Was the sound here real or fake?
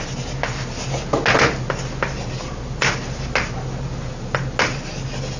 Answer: real